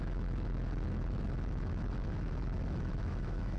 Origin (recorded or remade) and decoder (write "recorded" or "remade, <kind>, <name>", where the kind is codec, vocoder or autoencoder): remade, autoencoder, DAC-VAE